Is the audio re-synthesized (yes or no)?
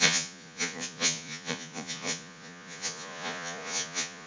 yes